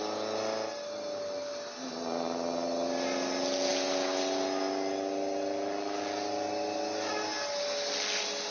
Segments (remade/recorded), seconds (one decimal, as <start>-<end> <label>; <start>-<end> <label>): 0.0-8.5 recorded